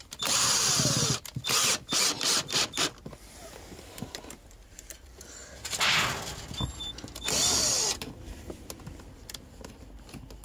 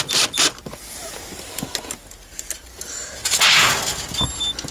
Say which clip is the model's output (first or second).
first